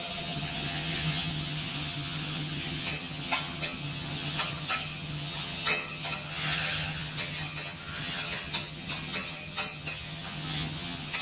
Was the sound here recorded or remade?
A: remade